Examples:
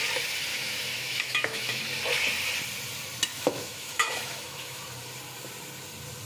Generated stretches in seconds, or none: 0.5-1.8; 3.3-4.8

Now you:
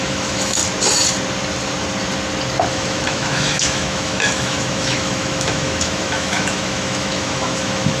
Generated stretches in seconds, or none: 0.0-0.6; 2.7-8.0

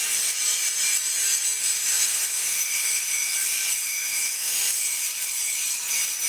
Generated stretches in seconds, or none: 1.6-3.3; 3.8-5.0

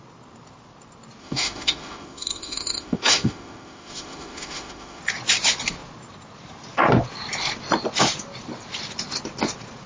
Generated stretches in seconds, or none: 1.2-5.0